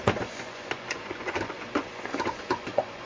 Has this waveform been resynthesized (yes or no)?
yes